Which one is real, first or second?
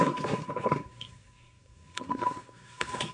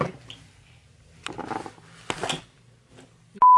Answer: second